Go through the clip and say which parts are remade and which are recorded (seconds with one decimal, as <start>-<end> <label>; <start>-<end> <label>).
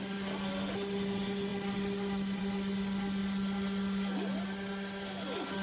0.0-5.6 recorded